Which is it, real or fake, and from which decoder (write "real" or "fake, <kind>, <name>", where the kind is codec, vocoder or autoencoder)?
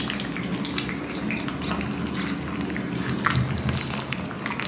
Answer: real